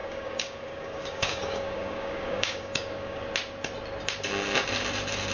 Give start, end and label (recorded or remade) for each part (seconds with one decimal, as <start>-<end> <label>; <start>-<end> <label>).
0.0-3.2 remade; 3.2-5.3 recorded

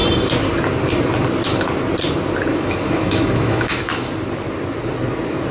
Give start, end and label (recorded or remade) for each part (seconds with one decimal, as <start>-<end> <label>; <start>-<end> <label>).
0.0-2.5 recorded; 2.5-4.1 remade; 4.1-5.5 recorded